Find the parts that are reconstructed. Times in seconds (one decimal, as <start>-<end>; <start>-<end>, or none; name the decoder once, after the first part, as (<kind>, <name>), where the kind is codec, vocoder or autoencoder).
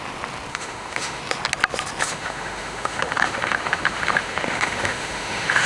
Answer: 0.5-1.2 (autoencoder, DAC-VAE); 2.0-5.7